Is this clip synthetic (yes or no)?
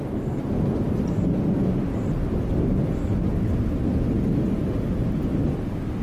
no